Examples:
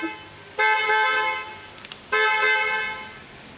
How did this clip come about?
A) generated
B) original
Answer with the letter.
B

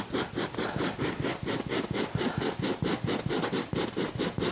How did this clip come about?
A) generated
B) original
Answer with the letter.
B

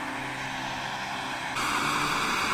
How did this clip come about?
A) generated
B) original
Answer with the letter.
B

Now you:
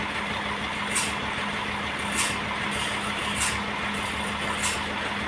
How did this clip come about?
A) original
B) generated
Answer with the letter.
A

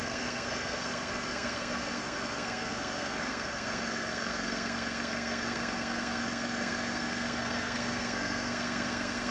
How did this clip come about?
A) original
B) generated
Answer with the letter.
B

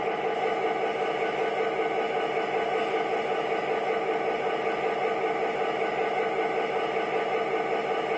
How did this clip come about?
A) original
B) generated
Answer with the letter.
A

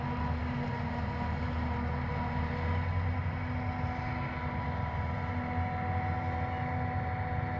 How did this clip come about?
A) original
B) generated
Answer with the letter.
A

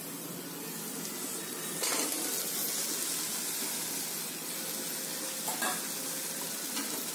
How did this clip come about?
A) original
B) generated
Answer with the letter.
A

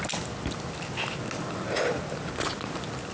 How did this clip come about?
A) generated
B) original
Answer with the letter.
B